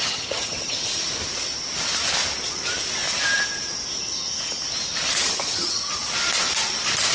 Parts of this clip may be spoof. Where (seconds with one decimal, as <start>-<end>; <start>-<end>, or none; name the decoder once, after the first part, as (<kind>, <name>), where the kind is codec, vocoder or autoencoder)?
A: 0.0-1.0 (vocoder, HiFi-GAN); 5.2-5.8